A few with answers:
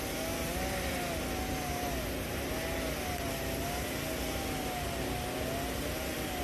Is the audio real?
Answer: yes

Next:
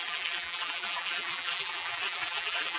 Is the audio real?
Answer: no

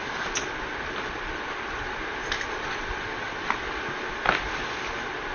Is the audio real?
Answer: yes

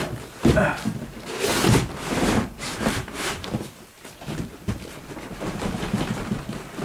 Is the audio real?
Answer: no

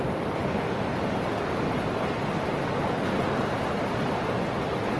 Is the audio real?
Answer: yes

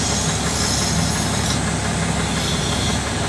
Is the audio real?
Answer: yes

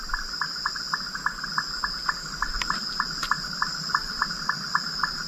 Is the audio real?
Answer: yes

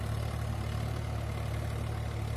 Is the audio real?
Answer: yes